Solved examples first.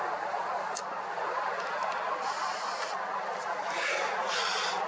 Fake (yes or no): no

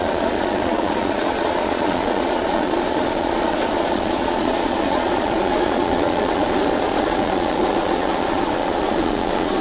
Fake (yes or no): yes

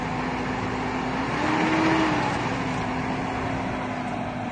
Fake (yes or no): no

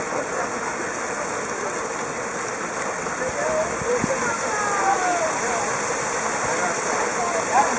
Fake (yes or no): no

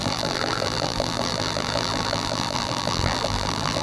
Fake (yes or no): yes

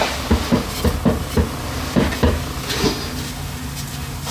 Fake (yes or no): no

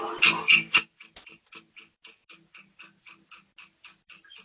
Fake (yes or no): no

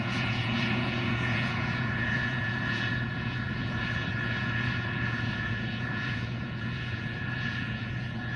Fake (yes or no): yes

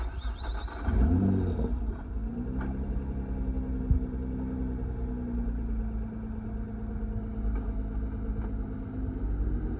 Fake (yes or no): no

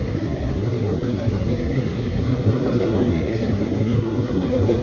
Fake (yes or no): yes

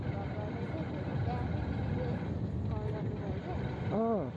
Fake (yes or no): no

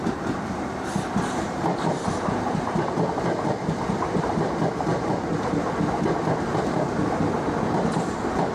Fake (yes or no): no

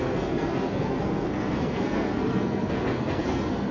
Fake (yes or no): yes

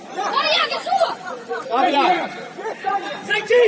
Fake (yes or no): yes